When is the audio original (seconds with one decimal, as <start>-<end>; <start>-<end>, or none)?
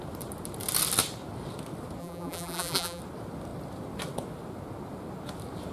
0.0-2.0; 3.0-5.7